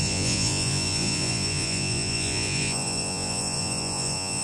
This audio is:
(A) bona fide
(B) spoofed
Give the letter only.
B